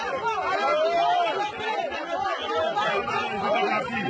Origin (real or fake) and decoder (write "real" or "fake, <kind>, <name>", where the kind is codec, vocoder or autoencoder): real